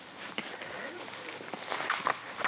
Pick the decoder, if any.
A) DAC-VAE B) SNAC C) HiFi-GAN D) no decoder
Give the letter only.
D